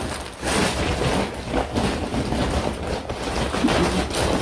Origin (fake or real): real